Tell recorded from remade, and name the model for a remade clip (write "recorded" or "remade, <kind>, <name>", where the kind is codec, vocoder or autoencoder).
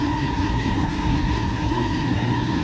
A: remade, codec, SNAC